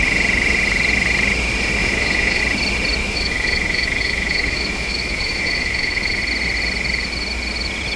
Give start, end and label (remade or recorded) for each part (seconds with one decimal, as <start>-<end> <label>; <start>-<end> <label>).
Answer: 0.0-1.8 recorded; 1.8-2.4 remade; 2.4-3.0 recorded; 3.0-6.2 remade; 6.2-8.0 recorded